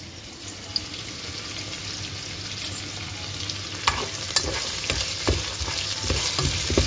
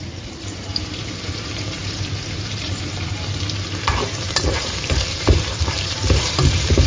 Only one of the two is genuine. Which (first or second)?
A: first